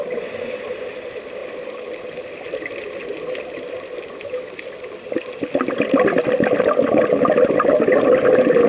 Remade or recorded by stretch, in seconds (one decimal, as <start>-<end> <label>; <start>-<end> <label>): 0.0-8.7 recorded